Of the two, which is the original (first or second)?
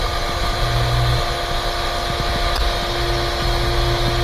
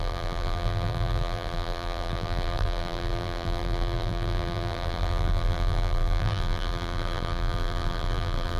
first